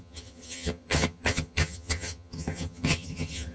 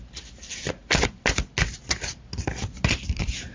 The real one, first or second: second